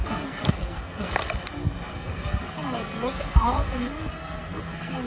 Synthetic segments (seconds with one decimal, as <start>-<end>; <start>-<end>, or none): 0.0-1.4; 1.9-5.1